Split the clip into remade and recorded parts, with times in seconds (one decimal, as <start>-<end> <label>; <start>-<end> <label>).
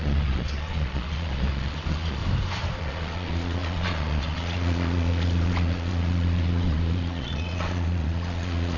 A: 0.0-2.2 remade; 2.2-2.8 recorded; 2.8-8.8 remade